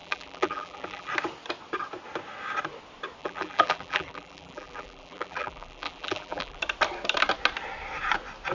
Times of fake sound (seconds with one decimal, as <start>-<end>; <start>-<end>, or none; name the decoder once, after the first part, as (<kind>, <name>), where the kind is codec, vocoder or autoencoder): 0.0-1.1 (vocoder, BigVGAN v2); 3.2-6.6